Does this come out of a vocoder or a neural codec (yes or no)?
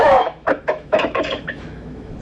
yes